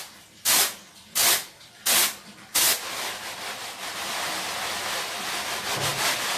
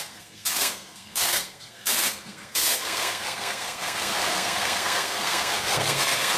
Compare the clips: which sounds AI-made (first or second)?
second